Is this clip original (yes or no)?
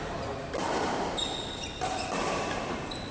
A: yes